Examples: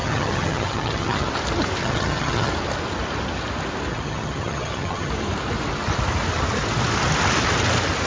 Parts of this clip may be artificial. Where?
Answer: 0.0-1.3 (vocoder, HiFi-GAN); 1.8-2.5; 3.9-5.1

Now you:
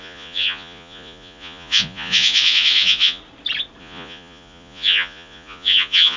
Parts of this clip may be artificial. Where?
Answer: 0.0-3.2 (vocoder, Vocos); 3.8-6.2

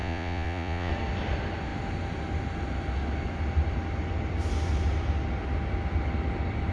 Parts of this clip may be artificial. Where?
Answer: 0.0-0.9 (vocoder, Vocos)

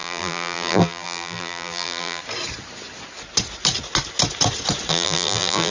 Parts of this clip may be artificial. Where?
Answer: 0.0-2.2 (vocoder, BigVGAN v2); 4.9-5.7

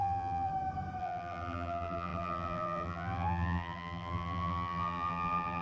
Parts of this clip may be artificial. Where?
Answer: 0.0-0.5 (vocoder, BigVGAN v2); 1.0-5.6

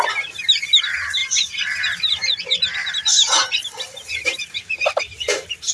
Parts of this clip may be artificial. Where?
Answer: none

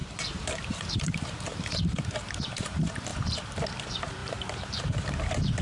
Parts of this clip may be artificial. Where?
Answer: 0.0-3.1 (vocoder, BigVGAN v2); 3.8-5.6